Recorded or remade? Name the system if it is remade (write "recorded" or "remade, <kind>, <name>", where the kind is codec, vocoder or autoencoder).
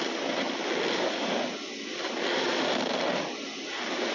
recorded